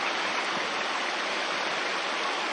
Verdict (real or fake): real